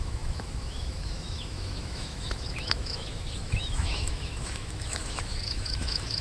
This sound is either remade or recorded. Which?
remade